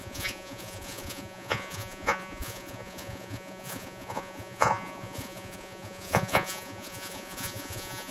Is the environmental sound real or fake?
fake